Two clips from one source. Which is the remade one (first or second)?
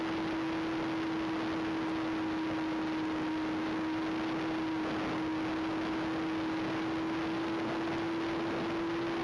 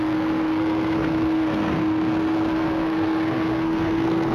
second